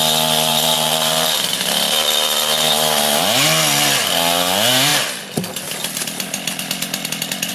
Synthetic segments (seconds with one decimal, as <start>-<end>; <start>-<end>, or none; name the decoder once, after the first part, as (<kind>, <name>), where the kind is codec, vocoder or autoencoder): 0.5-2.6 (vocoder, BigVGAN v2)